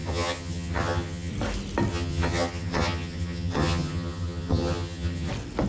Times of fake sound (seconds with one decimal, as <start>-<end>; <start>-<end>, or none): 0.0-1.3; 1.9-5.3